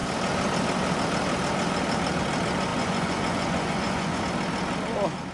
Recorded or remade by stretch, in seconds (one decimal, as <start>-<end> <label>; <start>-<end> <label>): 0.0-2.7 recorded; 2.7-4.2 remade; 4.2-5.3 recorded